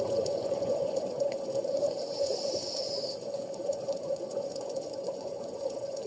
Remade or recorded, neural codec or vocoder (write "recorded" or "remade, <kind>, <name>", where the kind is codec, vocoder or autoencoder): remade, vocoder, Vocos